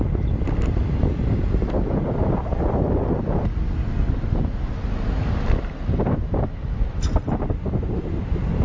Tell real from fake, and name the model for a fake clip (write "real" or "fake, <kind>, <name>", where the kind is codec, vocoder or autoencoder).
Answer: real